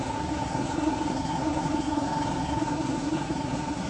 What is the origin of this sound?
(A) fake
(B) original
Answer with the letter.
A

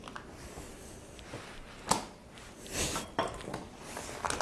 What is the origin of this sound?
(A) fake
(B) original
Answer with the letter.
B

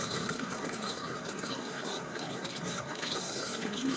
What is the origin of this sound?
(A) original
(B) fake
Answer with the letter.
B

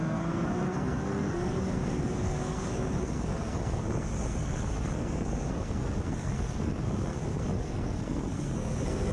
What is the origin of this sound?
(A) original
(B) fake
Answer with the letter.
B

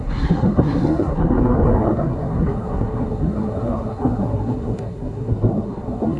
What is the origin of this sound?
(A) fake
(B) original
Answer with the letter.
A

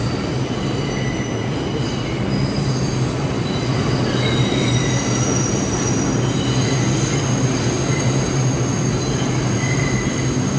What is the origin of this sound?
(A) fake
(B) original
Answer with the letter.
B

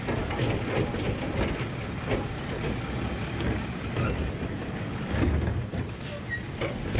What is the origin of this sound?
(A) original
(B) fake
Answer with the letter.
A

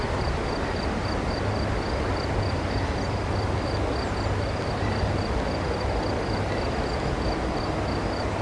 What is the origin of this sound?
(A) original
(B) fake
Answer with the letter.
A